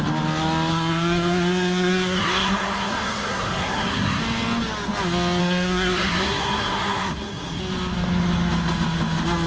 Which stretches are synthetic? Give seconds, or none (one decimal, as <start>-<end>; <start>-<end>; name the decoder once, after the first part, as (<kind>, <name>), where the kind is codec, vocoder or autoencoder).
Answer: 0.7-4.2 (codec, SNAC); 5.4-7.6

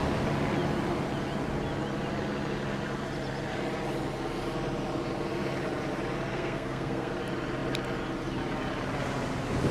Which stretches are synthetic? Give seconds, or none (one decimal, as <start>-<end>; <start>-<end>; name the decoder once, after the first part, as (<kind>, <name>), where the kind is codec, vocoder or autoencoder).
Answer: 6.3-7.1 (codec, SNAC)